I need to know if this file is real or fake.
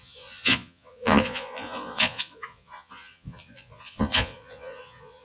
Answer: fake